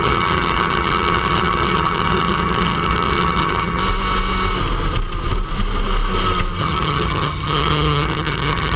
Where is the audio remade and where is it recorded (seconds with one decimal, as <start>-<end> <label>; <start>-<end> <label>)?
0.0-3.8 remade; 3.8-6.6 recorded; 6.6-8.8 remade